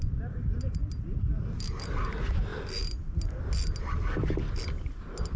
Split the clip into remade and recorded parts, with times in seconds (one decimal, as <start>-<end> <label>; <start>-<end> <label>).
0.0-5.4 recorded